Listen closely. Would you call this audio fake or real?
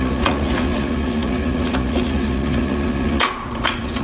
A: fake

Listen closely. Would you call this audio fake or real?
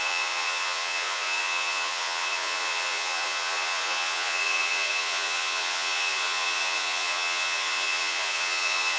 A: fake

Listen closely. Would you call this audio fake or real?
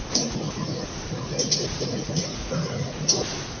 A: fake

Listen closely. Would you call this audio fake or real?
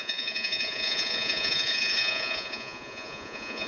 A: fake